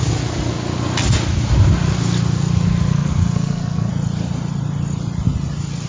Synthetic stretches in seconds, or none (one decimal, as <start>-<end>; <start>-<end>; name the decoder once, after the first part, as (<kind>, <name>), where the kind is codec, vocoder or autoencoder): 2.9-3.9 (codec, SNAC)